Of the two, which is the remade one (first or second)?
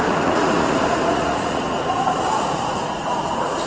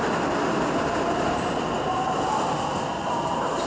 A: first